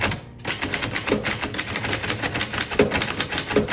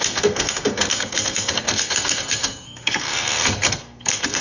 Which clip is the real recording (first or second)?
first